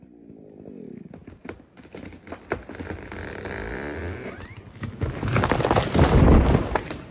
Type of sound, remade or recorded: recorded